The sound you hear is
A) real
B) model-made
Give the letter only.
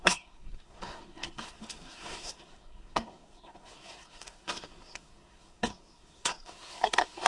B